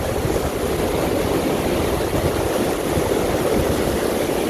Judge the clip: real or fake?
real